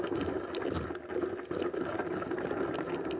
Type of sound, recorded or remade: recorded